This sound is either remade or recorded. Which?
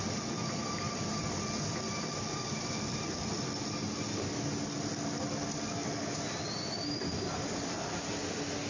recorded